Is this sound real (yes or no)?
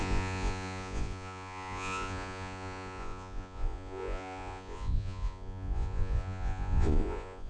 no